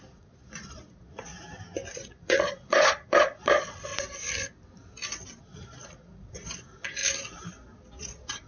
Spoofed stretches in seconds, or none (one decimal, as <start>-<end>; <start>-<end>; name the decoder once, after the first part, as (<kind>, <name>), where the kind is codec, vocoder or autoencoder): 0.0-1.3 (vocoder, Vocos); 1.9-3.9; 5.4-7.0; 8.0-8.5